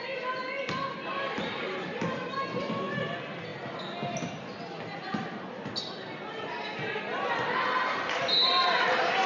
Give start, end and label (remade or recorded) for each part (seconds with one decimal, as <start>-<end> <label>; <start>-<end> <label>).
0.0-9.3 recorded